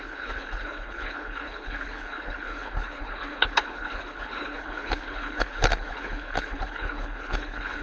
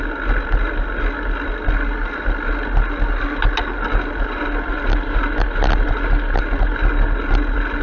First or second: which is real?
second